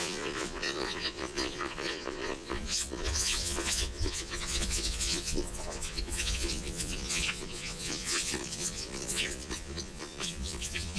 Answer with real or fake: fake